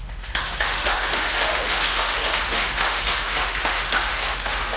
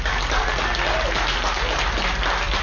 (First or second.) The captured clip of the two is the second